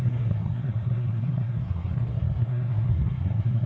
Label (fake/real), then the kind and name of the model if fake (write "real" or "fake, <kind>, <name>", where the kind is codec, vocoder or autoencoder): fake, codec, SNAC